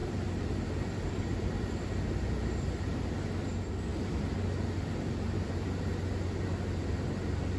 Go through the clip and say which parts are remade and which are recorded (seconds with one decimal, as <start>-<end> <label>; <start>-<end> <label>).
0.0-2.3 remade; 2.3-7.6 recorded